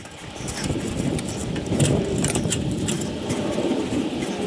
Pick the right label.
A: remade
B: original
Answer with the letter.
A